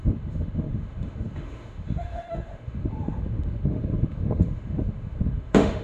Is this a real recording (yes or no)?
no